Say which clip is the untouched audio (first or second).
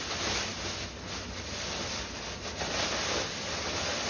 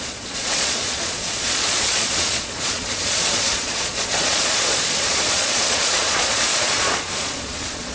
first